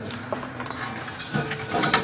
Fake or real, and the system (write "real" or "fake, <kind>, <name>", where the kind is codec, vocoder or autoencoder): real